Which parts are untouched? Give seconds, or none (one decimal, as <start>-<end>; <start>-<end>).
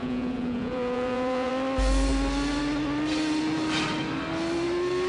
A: 1.5-5.1